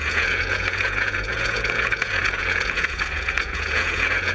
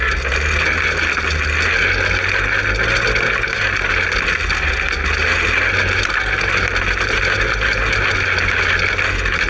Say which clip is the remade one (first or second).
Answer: first